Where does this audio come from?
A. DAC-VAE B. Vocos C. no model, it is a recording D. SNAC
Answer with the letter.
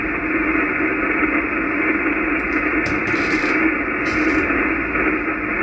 C